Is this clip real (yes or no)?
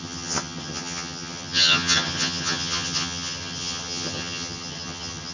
no